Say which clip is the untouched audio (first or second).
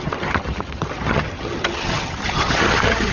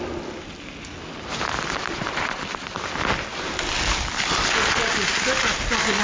second